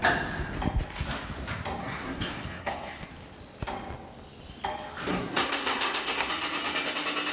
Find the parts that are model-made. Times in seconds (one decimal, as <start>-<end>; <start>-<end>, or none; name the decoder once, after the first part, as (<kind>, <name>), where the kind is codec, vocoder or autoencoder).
1.8-3.1 (codec, SNAC); 5.1-6.3